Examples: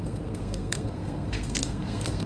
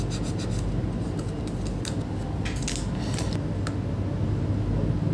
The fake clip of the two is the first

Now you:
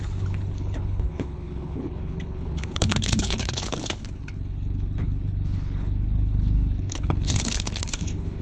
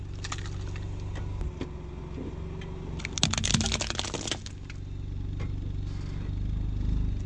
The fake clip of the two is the first